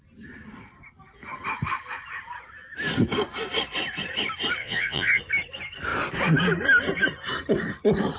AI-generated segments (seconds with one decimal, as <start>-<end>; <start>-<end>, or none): 4.6-5.2